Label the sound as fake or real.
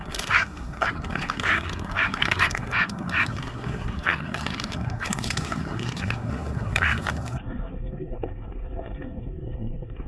fake